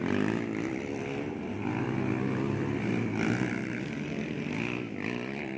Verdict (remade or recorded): recorded